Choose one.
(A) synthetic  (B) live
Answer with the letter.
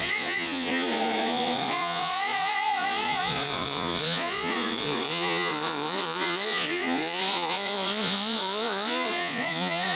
A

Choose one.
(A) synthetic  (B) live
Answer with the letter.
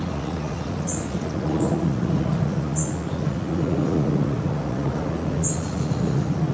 A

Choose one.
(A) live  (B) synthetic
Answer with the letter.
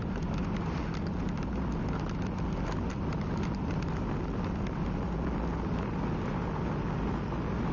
A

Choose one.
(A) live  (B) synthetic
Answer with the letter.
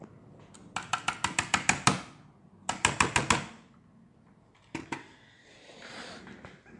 A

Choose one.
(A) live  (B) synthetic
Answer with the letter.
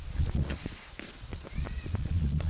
B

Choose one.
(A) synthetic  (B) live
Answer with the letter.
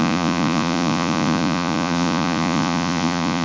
A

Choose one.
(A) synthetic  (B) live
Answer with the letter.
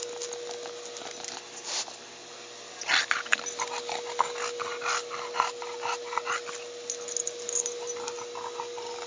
B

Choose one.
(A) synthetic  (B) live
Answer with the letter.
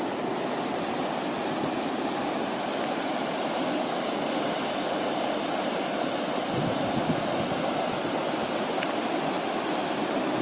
B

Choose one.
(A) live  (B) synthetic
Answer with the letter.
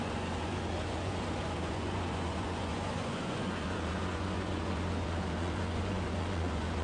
B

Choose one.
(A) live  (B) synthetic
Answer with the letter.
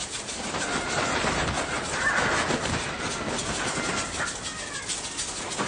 A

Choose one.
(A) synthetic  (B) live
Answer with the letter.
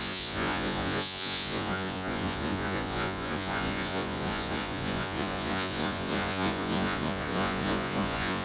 A